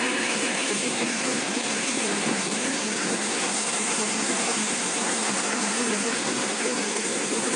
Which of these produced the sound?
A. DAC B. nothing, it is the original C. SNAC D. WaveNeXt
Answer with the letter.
C